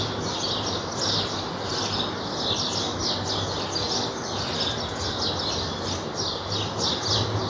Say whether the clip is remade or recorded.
recorded